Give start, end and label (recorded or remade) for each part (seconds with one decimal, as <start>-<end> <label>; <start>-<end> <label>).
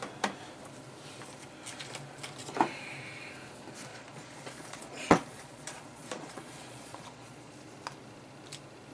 0.0-3.9 recorded; 3.9-7.5 remade; 7.5-8.9 recorded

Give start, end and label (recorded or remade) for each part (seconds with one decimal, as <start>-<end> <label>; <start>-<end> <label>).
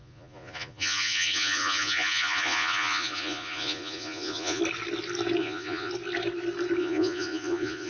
0.0-4.6 remade; 4.6-5.4 recorded; 5.4-5.9 remade; 5.9-6.8 recorded; 6.8-7.9 remade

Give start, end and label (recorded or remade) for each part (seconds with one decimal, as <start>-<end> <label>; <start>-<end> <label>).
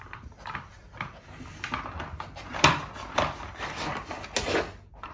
0.0-5.1 recorded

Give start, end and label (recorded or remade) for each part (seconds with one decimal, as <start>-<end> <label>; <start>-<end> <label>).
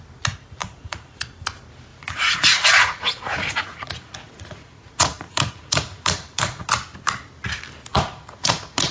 0.0-0.6 recorded; 0.6-1.2 remade; 1.2-1.9 recorded; 1.9-6.7 remade; 6.7-7.9 recorded; 7.9-8.9 remade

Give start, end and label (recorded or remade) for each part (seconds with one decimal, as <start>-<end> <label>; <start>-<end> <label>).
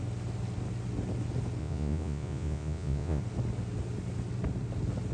0.0-1.6 recorded; 1.6-3.2 remade; 3.2-5.1 recorded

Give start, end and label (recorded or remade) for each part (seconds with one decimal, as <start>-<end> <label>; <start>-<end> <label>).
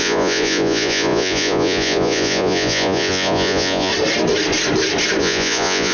0.0-3.9 remade; 3.9-5.2 recorded; 5.2-5.9 remade